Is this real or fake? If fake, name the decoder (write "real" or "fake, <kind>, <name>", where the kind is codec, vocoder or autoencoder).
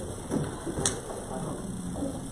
real